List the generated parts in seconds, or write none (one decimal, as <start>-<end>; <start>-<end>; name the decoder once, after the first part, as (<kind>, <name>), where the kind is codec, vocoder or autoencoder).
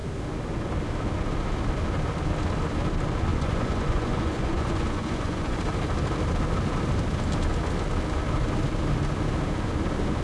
3.3-5.6 (vocoder, Vocos)